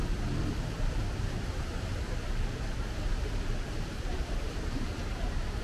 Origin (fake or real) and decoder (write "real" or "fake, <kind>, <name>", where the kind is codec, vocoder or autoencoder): fake, vocoder, BigVGAN v2